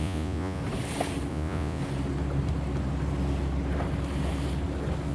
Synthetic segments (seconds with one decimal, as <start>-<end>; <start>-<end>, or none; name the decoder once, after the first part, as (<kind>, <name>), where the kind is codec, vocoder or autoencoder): 0.0-0.6 (vocoder, Vocos); 1.3-1.8